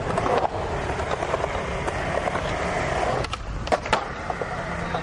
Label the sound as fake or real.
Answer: real